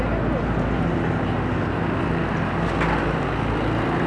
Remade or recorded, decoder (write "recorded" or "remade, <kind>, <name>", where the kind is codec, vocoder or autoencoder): recorded